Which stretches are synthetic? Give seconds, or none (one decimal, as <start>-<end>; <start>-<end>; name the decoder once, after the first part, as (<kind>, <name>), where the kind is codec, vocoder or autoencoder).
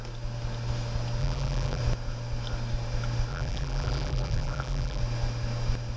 1.2-1.8 (vocoder, BigVGAN v2); 3.3-5.0